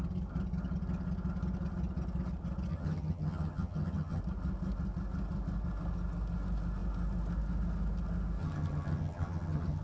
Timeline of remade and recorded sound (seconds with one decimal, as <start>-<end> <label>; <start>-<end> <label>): 0.0-2.7 recorded; 2.7-4.2 remade; 4.2-8.4 recorded; 8.4-9.8 remade